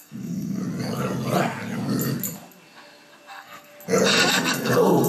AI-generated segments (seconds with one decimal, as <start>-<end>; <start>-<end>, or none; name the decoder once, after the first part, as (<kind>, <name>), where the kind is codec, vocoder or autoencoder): 0.0-0.6 (codec, SNAC); 3.3-3.7; 4.3-5.1